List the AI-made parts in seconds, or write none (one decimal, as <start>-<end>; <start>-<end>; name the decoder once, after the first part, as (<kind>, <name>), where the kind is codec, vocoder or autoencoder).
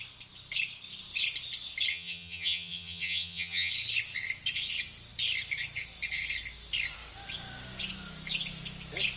1.9-3.7 (vocoder, HiFi-GAN)